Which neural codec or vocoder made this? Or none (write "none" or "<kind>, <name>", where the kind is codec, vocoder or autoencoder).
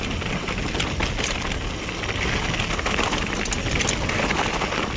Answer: none